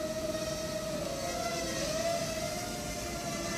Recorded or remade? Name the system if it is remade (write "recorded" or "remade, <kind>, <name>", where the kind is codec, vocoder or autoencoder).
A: recorded